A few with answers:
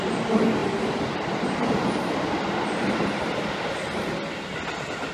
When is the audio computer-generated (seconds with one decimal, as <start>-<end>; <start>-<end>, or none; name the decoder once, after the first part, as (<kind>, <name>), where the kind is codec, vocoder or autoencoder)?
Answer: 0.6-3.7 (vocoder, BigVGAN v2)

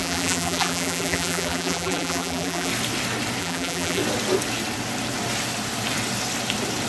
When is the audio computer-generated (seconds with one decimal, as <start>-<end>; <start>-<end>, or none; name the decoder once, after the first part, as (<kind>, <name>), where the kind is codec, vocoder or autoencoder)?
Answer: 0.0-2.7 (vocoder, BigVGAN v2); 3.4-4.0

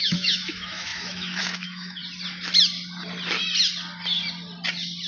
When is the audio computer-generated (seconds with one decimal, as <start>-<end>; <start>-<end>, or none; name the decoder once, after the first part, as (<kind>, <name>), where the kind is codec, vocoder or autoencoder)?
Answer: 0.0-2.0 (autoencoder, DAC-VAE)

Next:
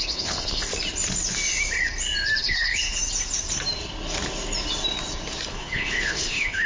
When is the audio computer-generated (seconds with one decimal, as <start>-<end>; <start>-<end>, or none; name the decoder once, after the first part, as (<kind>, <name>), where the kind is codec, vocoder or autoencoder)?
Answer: 0.0-0.7 (codec, HILCodec); 2.4-3.0; 5.5-6.7

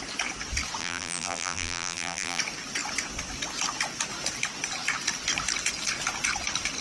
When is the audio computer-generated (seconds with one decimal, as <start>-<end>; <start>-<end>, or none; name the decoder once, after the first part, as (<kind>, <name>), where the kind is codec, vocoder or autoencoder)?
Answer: 0.8-2.4 (vocoder, BigVGAN v2)

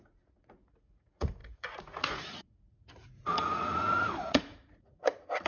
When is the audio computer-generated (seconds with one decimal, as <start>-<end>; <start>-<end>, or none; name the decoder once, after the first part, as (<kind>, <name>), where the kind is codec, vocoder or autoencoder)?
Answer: 0.0-5.5 (vocoder, Vocos)

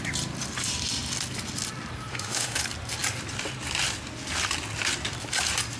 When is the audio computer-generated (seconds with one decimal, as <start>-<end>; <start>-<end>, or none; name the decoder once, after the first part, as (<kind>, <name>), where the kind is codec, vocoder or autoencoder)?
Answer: 2.1-2.6 (autoencoder, DAC-VAE)

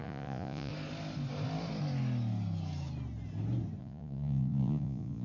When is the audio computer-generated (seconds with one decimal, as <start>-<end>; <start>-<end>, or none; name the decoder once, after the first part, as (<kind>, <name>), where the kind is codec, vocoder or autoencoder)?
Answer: 0.0-0.7 (vocoder, Vocos); 3.8-5.2